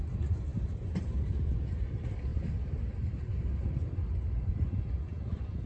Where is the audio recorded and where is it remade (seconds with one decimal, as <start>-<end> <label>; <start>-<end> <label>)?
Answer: 0.0-2.3 recorded; 2.3-3.5 remade; 3.5-5.7 recorded